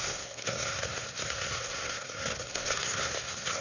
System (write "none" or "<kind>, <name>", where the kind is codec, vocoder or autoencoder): codec, SNAC